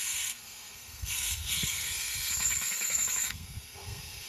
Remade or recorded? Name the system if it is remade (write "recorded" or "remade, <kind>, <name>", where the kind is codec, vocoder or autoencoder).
remade, codec, SNAC